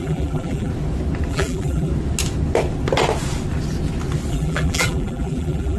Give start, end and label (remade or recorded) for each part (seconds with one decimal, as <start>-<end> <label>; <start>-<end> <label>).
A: 0.0-0.7 remade; 0.7-1.3 recorded; 1.3-1.9 remade; 1.9-4.3 recorded; 4.3-5.8 remade